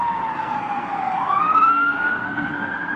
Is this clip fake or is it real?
fake